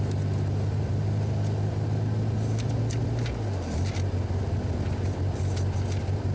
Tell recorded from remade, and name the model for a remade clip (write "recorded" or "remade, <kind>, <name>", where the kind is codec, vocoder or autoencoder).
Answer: recorded